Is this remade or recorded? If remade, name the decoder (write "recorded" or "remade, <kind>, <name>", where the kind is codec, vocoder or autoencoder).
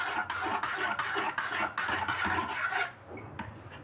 recorded